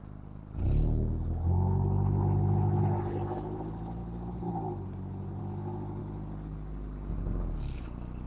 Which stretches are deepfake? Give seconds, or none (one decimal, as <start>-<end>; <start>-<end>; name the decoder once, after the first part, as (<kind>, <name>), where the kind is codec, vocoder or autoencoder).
none